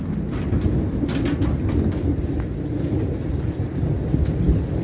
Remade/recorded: recorded